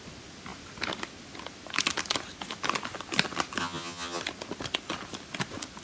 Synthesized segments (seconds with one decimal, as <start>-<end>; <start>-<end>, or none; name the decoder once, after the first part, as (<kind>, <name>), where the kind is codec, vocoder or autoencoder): 3.6-4.2 (vocoder, HiFi-GAN)